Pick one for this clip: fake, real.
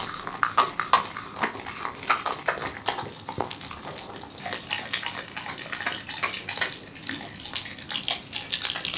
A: real